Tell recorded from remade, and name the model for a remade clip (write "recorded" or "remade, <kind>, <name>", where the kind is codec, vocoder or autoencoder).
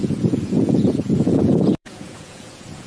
remade, vocoder, Vocos